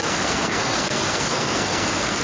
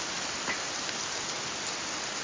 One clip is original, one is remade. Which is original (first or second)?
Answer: second